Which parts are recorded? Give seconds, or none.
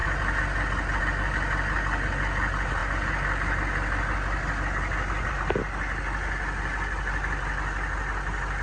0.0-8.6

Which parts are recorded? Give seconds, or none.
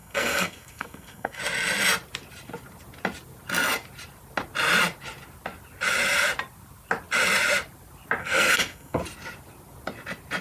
1.4-8.2; 9.0-10.4